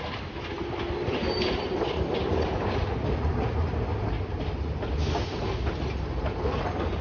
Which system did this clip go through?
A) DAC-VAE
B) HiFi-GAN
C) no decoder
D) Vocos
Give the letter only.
C